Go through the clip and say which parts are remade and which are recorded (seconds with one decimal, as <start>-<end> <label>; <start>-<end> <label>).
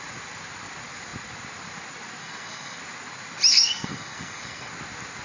0.0-2.2 recorded; 2.2-2.8 remade; 2.8-3.5 recorded; 3.5-4.7 remade; 4.7-5.2 recorded